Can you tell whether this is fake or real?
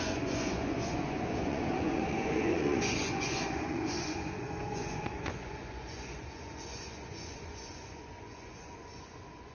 fake